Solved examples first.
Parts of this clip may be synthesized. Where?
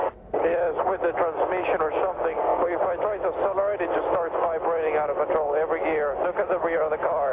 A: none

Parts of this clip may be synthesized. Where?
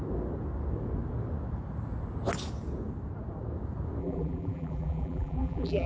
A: 4.0-5.9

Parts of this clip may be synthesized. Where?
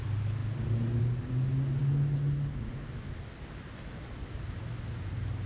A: none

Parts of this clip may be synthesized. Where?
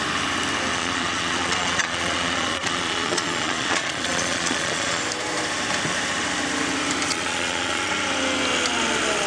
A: 0.7-5.0; 7.1-7.9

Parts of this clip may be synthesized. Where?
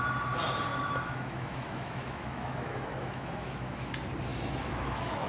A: 0.7-3.9; 4.3-5.3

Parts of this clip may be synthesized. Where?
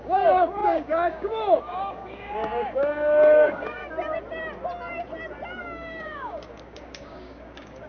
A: 0.0-3.8; 5.6-7.9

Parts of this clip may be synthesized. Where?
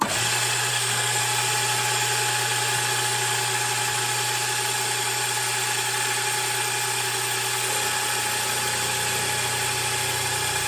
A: 0.7-1.2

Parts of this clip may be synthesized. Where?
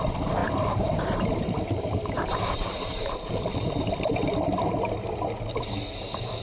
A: 0.4-3.3